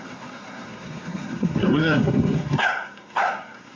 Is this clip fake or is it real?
fake